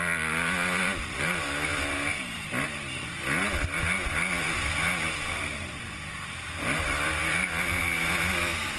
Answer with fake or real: real